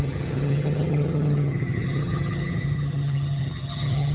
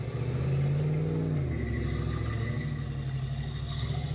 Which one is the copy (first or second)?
first